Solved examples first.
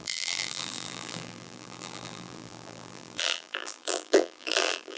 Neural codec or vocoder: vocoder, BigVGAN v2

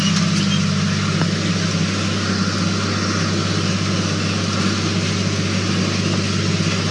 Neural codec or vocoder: none